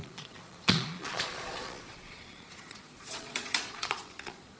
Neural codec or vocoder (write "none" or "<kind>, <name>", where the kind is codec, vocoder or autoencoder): vocoder, Vocos